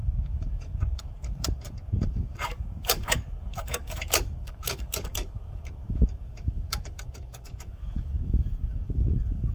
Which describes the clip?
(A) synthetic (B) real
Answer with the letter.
A